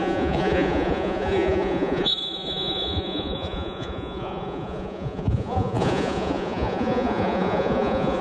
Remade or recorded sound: remade